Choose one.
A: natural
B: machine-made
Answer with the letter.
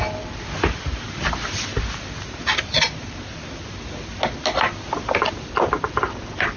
A